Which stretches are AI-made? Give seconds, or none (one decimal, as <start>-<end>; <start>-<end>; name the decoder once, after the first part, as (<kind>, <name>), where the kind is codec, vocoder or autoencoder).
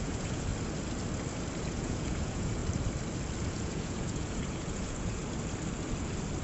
0.0-0.5 (vocoder, Vocos); 1.6-2.6; 3.4-5.2